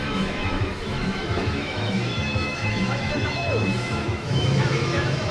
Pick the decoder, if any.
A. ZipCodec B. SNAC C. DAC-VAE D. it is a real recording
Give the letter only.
C